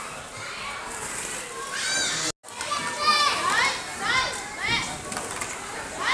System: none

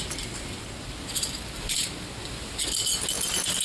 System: none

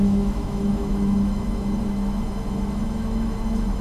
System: autoencoder, DAC-VAE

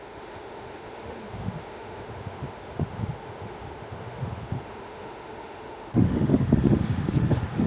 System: autoencoder, DAC-VAE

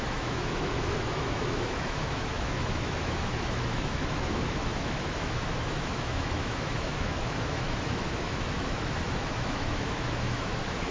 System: autoencoder, DAC-VAE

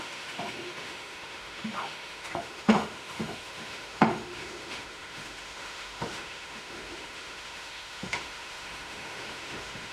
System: autoencoder, DAC-VAE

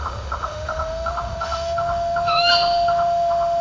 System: autoencoder, DAC-VAE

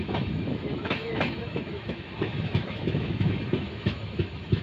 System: autoencoder, DAC-VAE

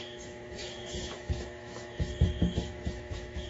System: autoencoder, DAC-VAE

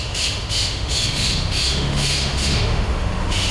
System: autoencoder, DAC-VAE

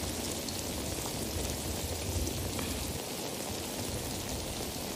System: none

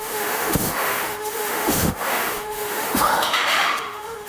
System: autoencoder, DAC-VAE